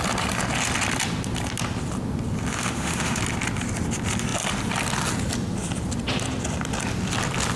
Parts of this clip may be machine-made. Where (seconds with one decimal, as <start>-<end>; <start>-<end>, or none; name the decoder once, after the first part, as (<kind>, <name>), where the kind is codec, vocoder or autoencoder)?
2.5-3.2 (autoencoder, DAC-VAE)